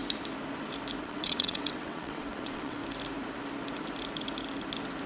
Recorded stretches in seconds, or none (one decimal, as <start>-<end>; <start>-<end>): 0.0-1.0; 2.8-5.1